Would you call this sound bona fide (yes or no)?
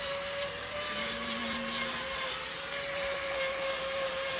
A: no